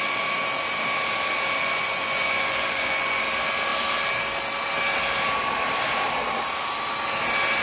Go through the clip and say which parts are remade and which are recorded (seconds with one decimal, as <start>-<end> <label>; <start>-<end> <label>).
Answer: 0.0-1.6 recorded; 1.6-3.2 remade; 3.2-7.6 recorded